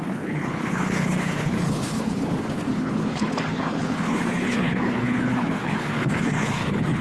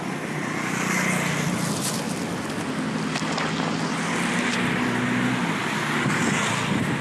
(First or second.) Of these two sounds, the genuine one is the second